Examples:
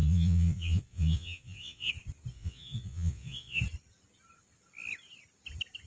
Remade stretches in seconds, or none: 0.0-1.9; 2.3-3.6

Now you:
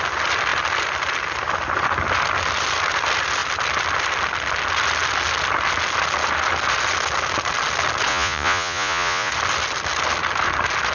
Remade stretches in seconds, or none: 8.1-9.3

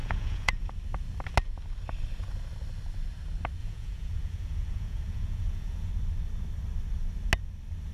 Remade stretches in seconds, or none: 0.0-0.7; 3.6-5.9

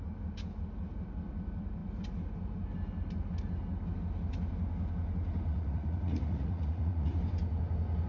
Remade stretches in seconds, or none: 5.5-7.1

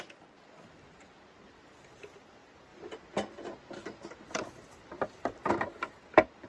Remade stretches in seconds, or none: none